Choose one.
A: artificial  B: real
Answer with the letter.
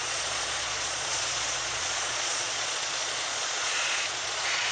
A